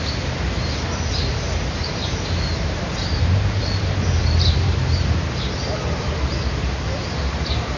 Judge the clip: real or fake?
fake